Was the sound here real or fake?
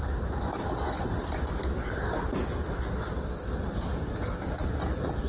real